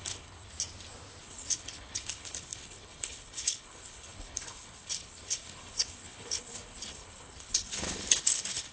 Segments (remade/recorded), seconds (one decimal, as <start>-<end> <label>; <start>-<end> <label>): 0.0-0.5 remade; 0.5-1.2 recorded; 1.2-8.7 remade